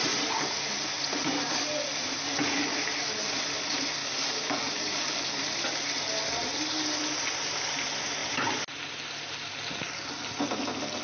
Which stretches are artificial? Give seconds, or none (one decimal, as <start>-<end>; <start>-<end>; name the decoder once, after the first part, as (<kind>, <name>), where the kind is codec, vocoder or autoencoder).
4.0-5.4 (codec, DAC)